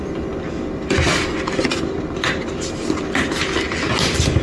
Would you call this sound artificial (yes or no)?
no